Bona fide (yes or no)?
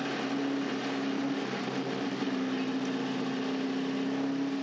yes